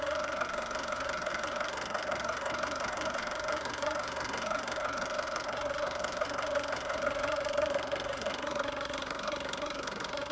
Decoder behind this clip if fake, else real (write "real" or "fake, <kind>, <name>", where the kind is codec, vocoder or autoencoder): fake, codec, SNAC